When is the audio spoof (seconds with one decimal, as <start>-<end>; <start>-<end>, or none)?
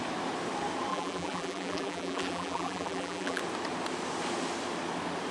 0.9-3.4